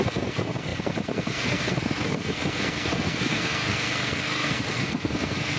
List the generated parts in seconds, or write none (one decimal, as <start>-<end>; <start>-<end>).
0.0-5.6